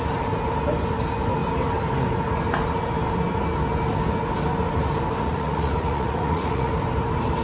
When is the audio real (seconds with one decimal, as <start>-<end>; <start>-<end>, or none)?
0.0-5.2; 6.7-7.4